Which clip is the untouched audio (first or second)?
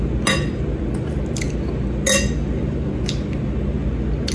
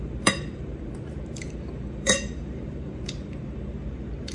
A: first